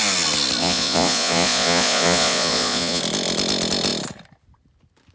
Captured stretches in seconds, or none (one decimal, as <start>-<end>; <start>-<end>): 0.0-0.6; 3.0-5.1